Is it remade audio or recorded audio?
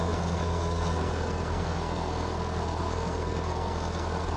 remade